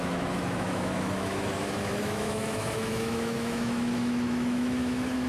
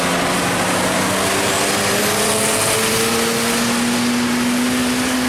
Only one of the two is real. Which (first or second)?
second